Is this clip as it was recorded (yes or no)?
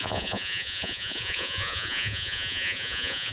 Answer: no